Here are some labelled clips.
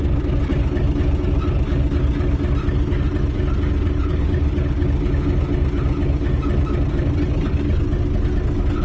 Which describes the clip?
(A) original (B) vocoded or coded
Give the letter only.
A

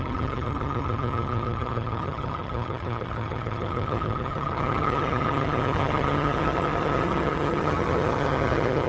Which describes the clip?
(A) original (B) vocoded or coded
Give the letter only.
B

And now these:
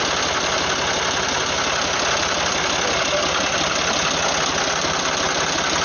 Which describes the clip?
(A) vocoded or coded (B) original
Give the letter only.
B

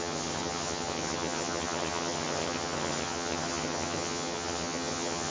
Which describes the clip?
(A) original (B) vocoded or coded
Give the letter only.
B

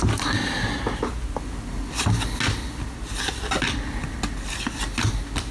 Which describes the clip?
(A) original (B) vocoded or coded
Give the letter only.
A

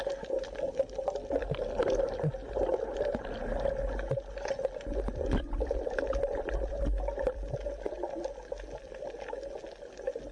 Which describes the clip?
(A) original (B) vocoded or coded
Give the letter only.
A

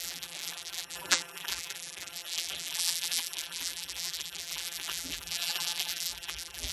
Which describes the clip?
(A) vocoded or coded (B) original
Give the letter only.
A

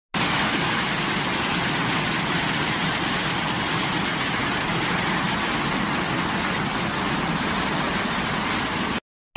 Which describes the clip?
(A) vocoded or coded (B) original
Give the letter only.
B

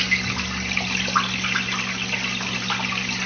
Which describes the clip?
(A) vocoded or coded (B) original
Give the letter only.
B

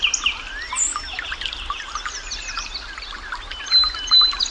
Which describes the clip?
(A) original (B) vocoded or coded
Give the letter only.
A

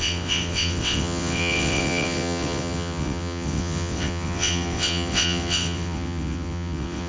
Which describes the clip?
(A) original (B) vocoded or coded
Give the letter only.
B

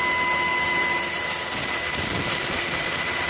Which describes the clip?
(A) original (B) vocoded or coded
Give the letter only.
A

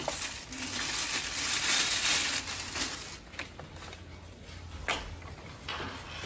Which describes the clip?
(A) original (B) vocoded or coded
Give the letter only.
A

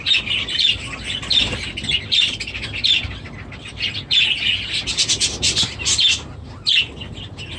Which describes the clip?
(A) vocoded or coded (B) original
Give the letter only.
B